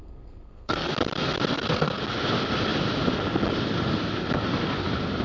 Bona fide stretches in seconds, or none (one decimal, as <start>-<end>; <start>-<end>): 0.9-1.5; 2.0-5.2